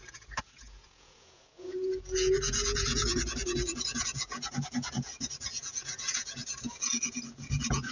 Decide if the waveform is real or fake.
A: fake